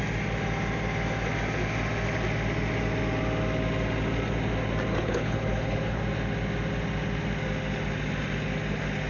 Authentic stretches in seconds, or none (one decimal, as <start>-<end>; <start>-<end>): 0.0-4.9; 6.0-9.1